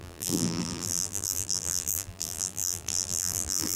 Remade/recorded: remade